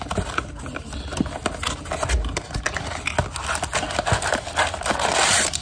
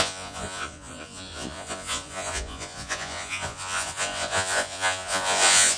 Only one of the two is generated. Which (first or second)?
second